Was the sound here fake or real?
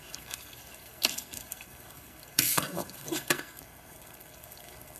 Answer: fake